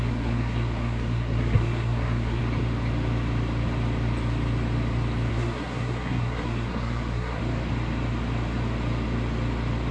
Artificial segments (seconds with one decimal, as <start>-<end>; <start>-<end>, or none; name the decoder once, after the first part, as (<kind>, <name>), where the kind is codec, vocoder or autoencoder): 0.0-2.4 (codec, SNAC); 5.3-7.4